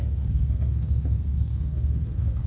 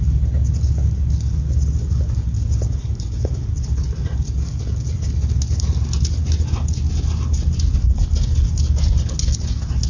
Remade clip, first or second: first